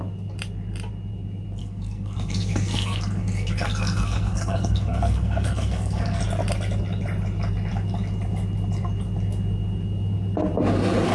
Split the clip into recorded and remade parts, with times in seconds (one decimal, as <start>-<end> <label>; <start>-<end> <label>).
0.0-1.6 recorded; 1.6-6.2 remade; 6.2-11.1 recorded